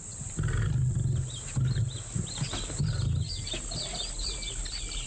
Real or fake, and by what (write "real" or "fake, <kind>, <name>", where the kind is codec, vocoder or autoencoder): real